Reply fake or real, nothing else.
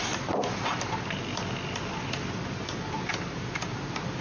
real